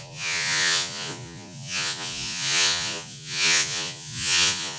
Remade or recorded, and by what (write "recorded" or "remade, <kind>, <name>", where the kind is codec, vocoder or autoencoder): remade, vocoder, Vocos